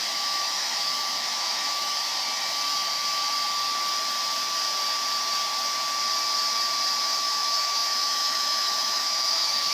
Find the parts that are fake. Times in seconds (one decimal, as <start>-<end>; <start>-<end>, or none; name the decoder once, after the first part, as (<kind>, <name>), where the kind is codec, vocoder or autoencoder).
0.0-2.1 (autoencoder, DAC-VAE); 7.0-9.7